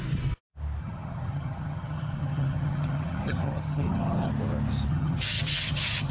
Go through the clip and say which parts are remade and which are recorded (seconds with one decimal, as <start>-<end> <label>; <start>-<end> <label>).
0.0-0.8 recorded; 0.8-4.3 remade; 4.3-4.9 recorded; 4.9-6.1 remade